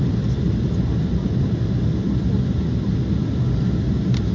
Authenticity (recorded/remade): recorded